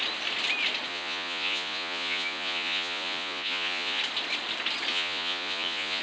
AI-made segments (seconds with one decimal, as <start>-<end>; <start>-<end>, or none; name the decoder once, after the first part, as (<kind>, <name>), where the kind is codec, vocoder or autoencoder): 0.9-4.0 (vocoder, Vocos); 4.9-6.0